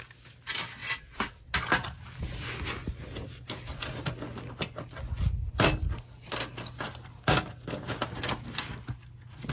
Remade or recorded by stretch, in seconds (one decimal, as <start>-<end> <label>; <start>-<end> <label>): 0.0-9.5 recorded